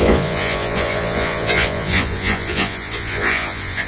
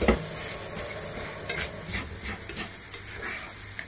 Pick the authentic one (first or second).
second